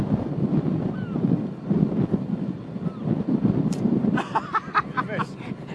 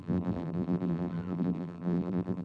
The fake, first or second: second